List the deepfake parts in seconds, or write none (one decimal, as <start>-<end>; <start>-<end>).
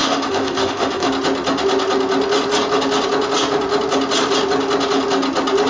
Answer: 0.0-1.1